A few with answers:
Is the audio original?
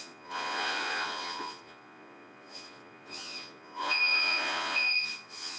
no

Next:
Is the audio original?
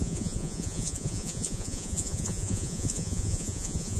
no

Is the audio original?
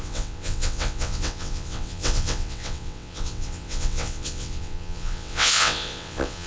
no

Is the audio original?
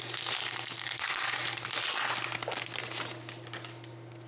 yes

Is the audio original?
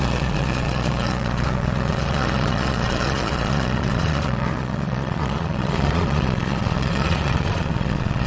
no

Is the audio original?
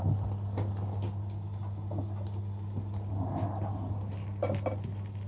yes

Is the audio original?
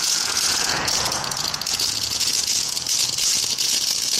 no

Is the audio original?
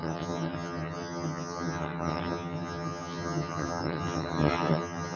no